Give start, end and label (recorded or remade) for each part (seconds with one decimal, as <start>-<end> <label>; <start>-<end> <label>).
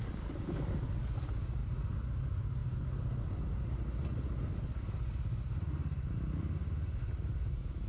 0.0-7.9 recorded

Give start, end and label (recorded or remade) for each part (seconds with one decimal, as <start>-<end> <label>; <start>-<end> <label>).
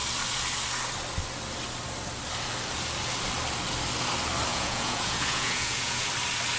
0.0-4.5 recorded; 4.5-6.1 remade; 6.1-6.6 recorded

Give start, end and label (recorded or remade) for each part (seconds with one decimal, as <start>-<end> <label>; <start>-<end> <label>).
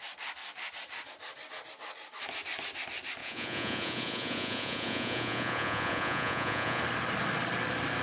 0.0-3.2 recorded; 3.2-6.8 remade; 6.8-8.0 recorded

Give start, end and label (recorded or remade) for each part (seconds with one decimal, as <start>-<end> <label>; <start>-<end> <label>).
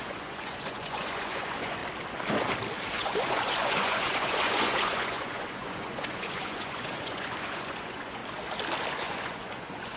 0.0-1.8 remade; 1.8-2.9 recorded; 2.9-8.2 remade; 8.2-8.9 recorded; 8.9-10.0 remade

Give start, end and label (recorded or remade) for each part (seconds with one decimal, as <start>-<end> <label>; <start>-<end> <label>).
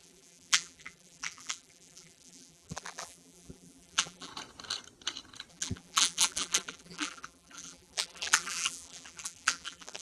0.0-4.3 remade; 4.3-5.5 recorded; 5.5-10.0 remade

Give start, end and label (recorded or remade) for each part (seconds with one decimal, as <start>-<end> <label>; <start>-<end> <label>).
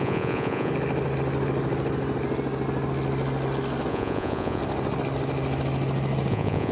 0.0-0.7 remade; 0.7-3.9 recorded; 3.9-4.6 remade; 4.6-6.3 recorded; 6.3-6.7 remade